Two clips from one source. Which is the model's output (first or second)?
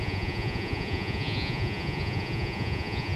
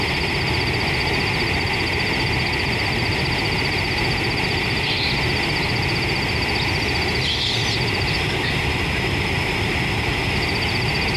first